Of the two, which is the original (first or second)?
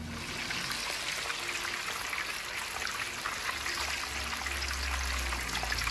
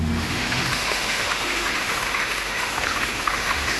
first